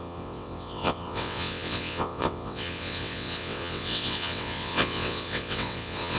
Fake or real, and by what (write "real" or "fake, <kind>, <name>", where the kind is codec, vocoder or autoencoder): fake, vocoder, WaveNeXt